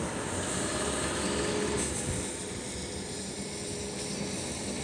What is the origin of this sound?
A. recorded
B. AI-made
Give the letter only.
A